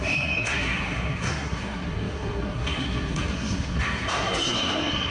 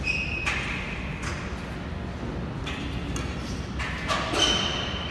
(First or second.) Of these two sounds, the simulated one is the first